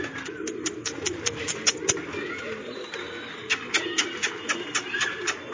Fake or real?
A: real